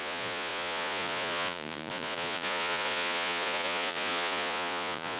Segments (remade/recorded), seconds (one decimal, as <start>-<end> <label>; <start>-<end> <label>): 0.0-5.2 remade

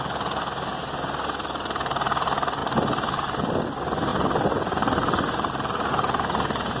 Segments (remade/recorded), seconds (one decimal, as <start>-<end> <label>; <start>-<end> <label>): 0.0-6.8 recorded

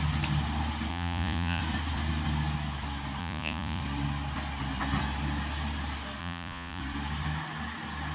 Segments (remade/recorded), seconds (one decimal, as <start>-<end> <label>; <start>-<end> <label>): 0.0-0.9 recorded; 0.9-1.6 remade; 1.6-3.2 recorded; 3.2-3.8 remade; 3.8-6.2 recorded; 6.2-6.8 remade; 6.8-8.1 recorded

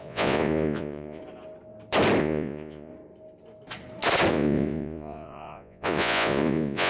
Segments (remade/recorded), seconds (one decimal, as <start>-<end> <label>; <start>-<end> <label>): 0.0-1.2 remade; 1.2-2.2 recorded; 2.2-2.9 remade; 2.9-4.3 recorded; 4.3-6.9 remade

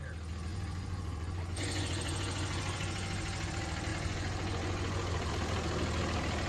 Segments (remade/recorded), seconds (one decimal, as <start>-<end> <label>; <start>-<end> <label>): 0.0-0.5 recorded; 0.5-3.5 remade; 3.5-3.9 recorded; 3.9-5.3 remade; 5.3-6.5 recorded

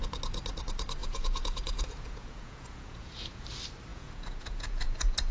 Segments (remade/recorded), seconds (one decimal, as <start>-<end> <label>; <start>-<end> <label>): 0.0-1.0 recorded; 1.0-3.4 remade; 3.4-3.9 recorded; 3.9-5.3 remade

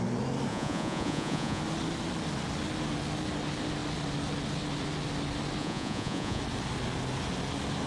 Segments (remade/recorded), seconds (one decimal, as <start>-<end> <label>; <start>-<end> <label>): 0.0-0.5 recorded; 0.5-1.6 remade; 1.6-5.6 recorded; 5.6-6.4 remade; 6.4-7.9 recorded